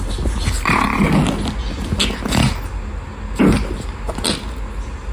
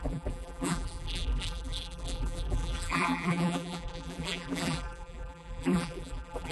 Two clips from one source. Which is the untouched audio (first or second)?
first